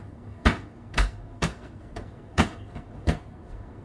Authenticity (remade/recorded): remade